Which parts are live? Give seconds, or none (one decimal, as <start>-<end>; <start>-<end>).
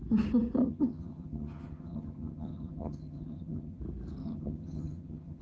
0.0-0.6; 3.8-4.2